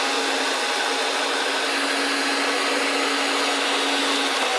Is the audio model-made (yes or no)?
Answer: no